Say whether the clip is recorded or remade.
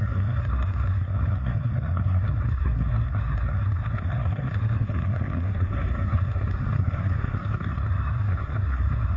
remade